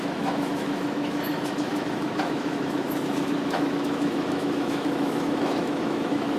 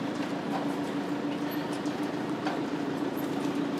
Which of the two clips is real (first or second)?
second